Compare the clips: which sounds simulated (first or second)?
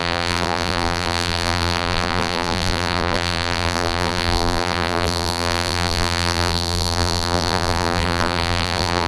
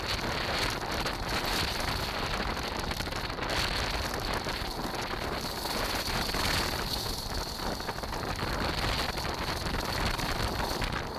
first